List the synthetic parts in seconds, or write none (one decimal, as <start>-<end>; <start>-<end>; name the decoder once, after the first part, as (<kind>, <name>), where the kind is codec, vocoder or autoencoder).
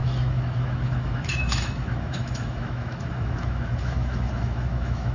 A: 0.0-5.1 (autoencoder, DAC-VAE)